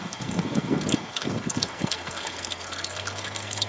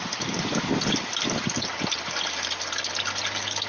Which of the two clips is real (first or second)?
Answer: second